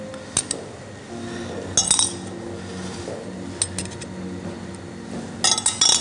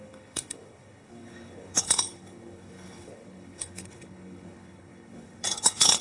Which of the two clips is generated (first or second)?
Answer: second